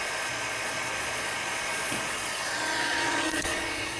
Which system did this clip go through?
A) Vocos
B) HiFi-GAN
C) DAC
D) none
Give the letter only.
A